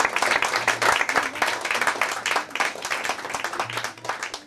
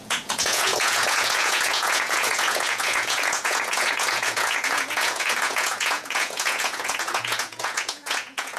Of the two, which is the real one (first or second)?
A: first